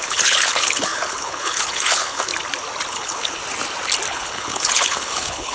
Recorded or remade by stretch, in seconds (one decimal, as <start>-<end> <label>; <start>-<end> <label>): 0.0-2.3 remade; 2.3-2.9 recorded; 2.9-3.4 remade; 3.4-4.1 recorded; 4.1-5.5 remade

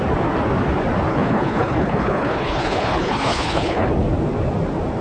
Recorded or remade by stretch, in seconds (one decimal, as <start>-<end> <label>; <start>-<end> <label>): 0.0-1.1 recorded; 1.1-3.9 remade; 3.9-5.0 recorded

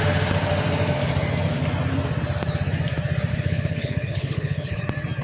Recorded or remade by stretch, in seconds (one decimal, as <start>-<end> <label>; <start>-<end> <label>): 0.0-3.3 recorded; 3.3-4.8 remade; 4.8-5.2 recorded

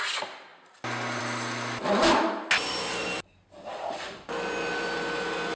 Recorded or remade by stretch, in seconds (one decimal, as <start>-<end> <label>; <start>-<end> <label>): 0.0-5.6 recorded

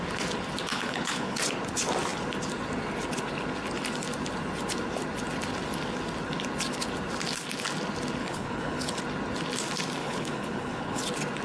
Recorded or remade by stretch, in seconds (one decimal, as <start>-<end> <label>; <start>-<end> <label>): 0.0-0.7 recorded; 0.7-1.4 remade; 1.4-8.2 recorded; 8.2-9.0 remade; 9.0-10.0 recorded; 10.0-11.0 remade; 11.0-11.4 recorded

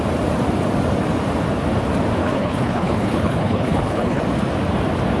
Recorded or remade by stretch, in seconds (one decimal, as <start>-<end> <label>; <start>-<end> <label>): 0.0-2.2 recorded; 2.2-4.2 remade; 4.2-5.2 recorded

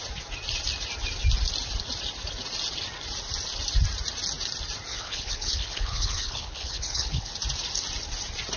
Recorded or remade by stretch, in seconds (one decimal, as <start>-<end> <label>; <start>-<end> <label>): 0.0-4.9 recorded; 4.9-7.3 remade; 7.3-8.6 recorded